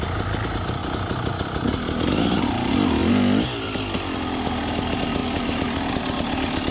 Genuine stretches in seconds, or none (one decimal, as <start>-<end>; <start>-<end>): 0.0-6.7